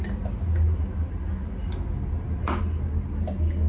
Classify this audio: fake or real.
real